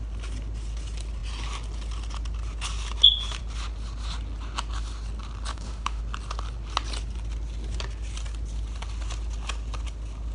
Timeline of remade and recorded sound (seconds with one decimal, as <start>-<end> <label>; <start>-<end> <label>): 0.0-5.5 recorded; 5.5-6.0 remade; 6.0-10.3 recorded